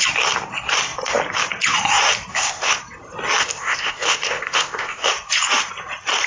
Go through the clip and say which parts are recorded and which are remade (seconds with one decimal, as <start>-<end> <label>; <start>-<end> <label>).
0.0-2.3 recorded; 2.3-2.8 remade; 2.8-3.4 recorded; 3.4-5.1 remade; 5.1-6.3 recorded